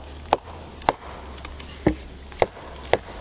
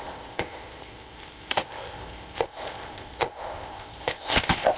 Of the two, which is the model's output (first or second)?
second